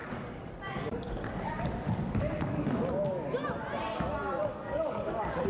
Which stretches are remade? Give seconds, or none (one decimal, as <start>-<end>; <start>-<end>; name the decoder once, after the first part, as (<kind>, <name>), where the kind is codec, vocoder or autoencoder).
0.0-2.8 (codec, DAC); 4.4-5.5